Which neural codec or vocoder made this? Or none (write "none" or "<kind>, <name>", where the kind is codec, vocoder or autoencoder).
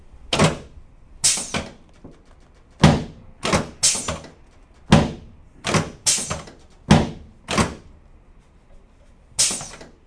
none